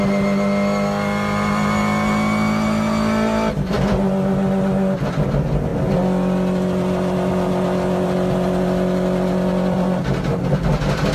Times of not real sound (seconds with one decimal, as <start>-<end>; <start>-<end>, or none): none